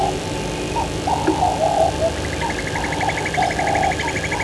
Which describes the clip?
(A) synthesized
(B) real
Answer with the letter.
B